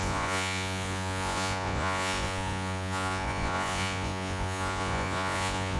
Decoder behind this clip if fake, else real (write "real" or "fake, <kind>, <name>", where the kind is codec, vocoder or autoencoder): fake, vocoder, Vocos